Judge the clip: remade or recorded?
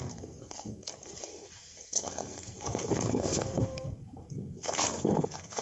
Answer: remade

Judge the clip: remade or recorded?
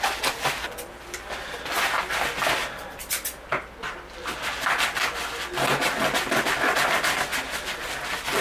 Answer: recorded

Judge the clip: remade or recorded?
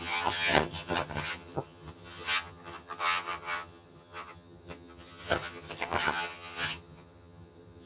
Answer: remade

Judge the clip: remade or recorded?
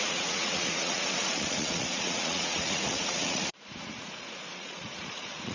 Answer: remade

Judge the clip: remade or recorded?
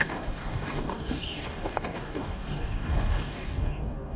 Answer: remade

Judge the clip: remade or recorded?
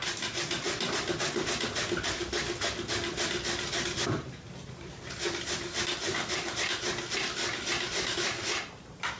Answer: recorded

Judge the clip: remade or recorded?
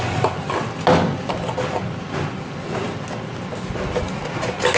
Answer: recorded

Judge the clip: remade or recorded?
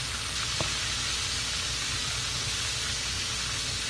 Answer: recorded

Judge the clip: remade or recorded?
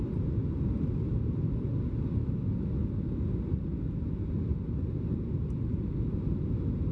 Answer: recorded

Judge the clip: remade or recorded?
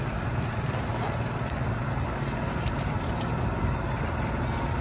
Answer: recorded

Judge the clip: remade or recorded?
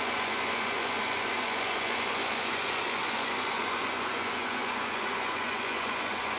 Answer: remade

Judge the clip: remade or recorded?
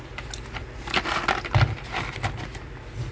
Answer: recorded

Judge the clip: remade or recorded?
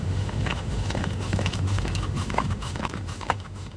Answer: remade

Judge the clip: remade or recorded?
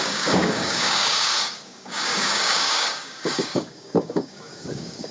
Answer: remade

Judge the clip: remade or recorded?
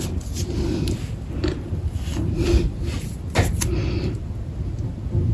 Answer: recorded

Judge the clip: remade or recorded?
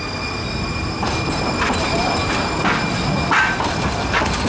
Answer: recorded